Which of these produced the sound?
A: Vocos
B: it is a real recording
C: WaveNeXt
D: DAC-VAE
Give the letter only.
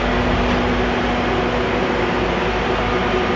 B